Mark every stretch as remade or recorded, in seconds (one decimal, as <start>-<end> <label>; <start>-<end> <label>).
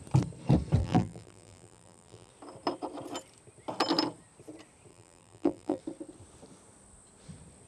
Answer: 0.0-0.8 recorded; 0.8-2.3 remade; 2.3-4.9 recorded; 4.9-5.8 remade; 5.8-7.7 recorded